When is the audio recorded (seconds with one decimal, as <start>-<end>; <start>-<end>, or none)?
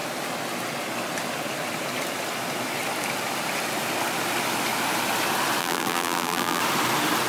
0.0-5.6; 6.6-7.3